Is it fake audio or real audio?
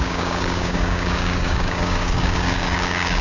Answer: fake